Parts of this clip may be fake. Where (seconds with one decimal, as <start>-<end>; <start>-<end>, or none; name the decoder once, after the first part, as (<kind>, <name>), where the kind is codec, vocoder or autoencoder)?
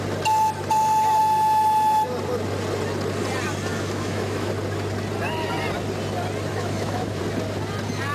3.7-4.5 (autoencoder, DAC-VAE); 6.5-7.2